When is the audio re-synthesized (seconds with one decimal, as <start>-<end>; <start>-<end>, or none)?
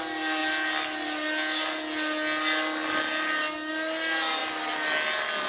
none